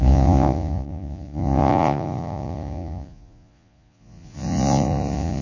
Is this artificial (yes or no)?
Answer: yes